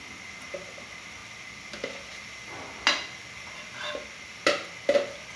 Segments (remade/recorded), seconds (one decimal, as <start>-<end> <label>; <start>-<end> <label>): 0.0-5.4 recorded